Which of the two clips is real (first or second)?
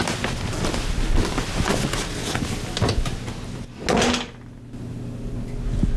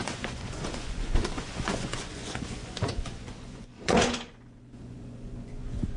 first